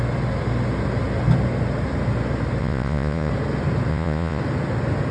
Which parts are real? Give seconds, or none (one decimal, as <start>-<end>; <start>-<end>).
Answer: 0.0-2.6; 3.3-3.9; 4.4-5.1